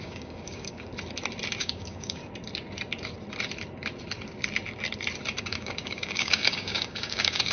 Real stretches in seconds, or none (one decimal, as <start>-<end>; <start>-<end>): 0.9-1.6; 2.2-5.4